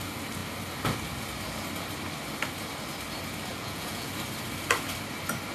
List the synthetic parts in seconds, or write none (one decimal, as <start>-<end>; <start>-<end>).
3.5-4.1